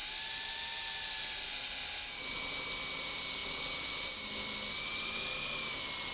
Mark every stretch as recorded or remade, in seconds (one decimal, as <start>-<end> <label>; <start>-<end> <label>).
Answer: 0.0-3.4 recorded; 3.4-4.1 remade; 4.1-6.1 recorded